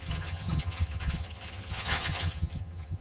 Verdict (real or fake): fake